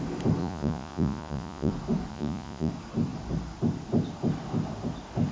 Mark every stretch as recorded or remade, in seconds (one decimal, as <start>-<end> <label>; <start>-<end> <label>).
0.0-0.4 recorded; 0.4-1.7 remade; 1.7-2.1 recorded; 2.1-2.7 remade; 2.7-5.3 recorded